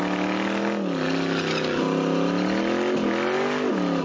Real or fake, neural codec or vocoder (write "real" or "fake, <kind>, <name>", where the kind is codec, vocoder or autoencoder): real